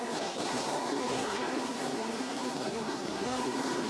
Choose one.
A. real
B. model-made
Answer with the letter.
B